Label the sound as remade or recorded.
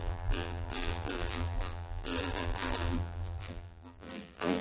remade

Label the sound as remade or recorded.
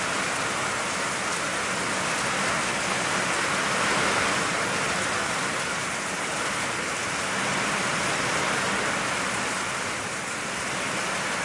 recorded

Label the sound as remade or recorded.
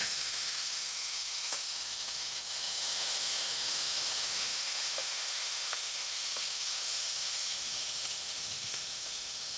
remade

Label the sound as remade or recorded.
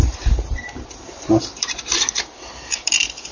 remade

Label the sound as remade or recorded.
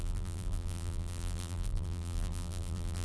remade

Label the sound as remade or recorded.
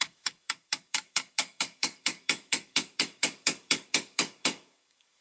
remade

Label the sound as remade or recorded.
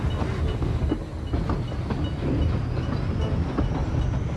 recorded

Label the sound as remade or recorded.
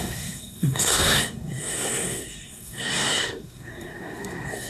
remade